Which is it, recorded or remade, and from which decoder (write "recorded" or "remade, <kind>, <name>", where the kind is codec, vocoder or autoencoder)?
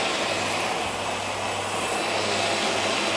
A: recorded